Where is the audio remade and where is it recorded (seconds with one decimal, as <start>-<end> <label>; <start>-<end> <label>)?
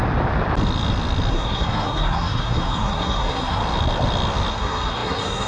0.0-1.3 recorded; 1.3-3.6 remade; 3.6-4.5 recorded; 4.5-5.5 remade